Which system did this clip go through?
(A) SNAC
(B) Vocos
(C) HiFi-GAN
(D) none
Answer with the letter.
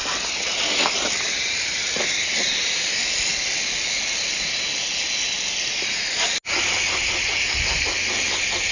D